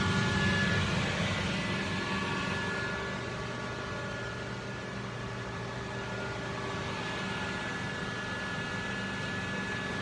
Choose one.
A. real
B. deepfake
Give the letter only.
A